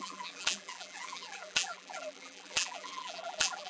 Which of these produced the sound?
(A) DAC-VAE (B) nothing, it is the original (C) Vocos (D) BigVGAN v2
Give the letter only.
D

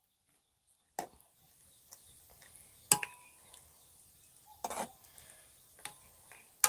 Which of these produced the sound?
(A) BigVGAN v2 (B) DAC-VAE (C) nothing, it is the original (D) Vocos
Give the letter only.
C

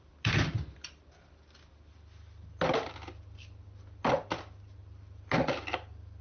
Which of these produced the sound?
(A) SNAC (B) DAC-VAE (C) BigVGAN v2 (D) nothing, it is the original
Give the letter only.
D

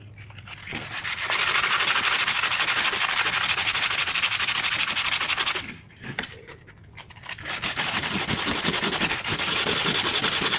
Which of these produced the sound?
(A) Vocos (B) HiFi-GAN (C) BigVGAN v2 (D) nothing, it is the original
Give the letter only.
D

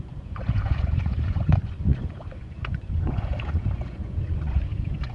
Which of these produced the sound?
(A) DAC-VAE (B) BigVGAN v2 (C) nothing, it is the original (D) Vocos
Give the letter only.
D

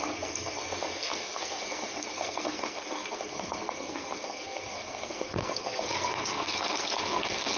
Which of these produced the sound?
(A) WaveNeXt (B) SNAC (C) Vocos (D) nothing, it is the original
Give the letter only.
B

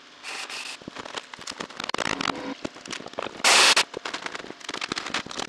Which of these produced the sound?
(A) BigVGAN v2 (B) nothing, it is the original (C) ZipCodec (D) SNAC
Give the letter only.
B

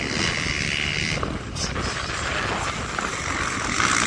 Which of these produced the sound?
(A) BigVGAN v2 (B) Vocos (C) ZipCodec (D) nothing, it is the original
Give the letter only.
D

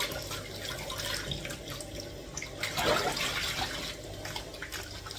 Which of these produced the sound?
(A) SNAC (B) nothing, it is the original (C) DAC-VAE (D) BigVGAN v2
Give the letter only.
B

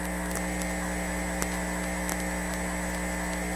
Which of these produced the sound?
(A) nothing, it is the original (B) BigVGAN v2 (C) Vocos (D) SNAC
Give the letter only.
A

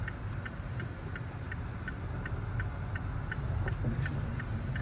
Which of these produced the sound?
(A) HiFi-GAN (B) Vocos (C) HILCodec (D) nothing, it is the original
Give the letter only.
D